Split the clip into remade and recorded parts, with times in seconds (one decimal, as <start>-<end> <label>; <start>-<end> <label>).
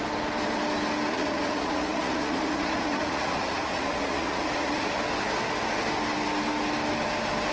0.0-1.1 recorded; 1.1-5.0 remade; 5.0-7.5 recorded